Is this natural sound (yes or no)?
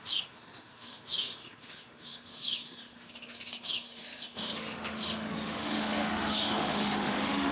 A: no